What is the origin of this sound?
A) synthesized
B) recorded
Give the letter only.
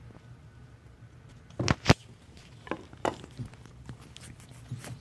B